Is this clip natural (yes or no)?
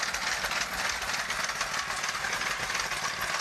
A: yes